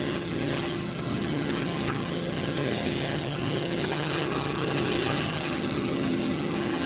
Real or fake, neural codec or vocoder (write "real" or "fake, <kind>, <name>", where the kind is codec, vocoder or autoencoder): fake, vocoder, HiFi-GAN